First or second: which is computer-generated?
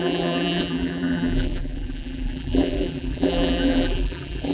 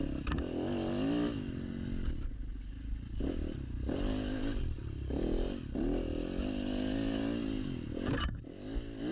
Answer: first